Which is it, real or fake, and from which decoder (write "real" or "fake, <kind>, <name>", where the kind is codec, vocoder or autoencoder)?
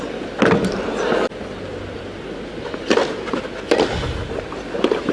real